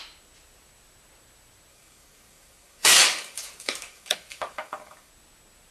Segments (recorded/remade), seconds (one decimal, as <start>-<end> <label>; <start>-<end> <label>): 0.0-1.7 recorded; 1.7-5.1 remade; 5.1-5.7 recorded